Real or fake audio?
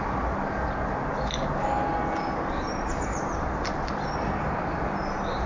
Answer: real